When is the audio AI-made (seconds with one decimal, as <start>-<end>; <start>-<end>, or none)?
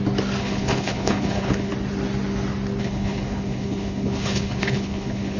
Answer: 0.4-1.7; 2.8-5.4